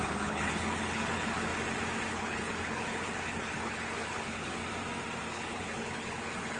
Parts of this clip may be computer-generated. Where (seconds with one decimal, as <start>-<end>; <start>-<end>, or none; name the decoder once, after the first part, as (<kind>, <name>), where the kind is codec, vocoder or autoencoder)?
0.0-1.5 (codec, HILCodec); 2.1-4.6; 5.3-6.6